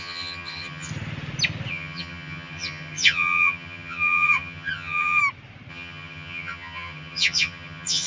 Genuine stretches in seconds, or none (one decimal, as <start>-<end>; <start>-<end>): 0.9-1.7; 5.2-5.7